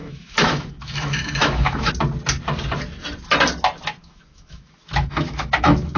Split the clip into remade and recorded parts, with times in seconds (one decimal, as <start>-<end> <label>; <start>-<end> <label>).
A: 0.0-1.9 remade; 1.9-4.0 recorded; 4.0-6.0 remade